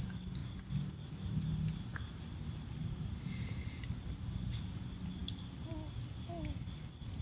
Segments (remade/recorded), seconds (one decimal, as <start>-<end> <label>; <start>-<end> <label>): 0.0-7.2 recorded